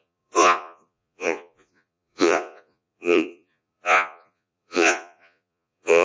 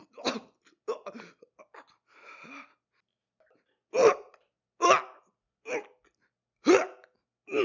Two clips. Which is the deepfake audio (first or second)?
first